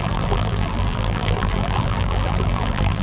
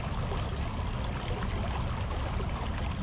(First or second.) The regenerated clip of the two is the first